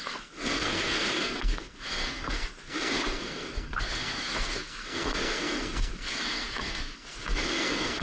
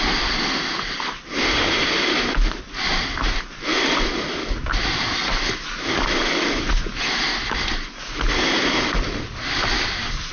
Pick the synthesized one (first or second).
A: first